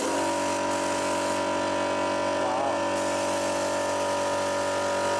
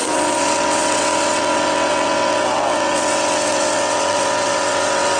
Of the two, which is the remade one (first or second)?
second